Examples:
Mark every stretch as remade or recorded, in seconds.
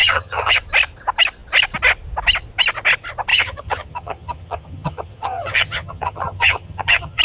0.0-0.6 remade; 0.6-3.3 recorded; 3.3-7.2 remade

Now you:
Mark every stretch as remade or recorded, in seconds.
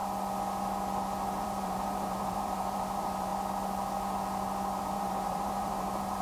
0.0-1.4 recorded; 1.4-3.3 remade; 3.3-4.8 recorded; 4.8-6.2 remade